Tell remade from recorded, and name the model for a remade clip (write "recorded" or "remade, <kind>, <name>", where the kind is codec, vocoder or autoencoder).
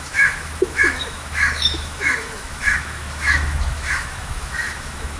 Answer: remade, autoencoder, DAC-VAE